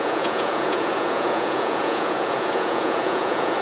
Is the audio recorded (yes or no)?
no